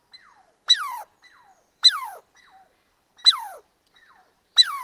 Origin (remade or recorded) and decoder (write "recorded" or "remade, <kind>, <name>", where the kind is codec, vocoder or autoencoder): remade, vocoder, BigVGAN v2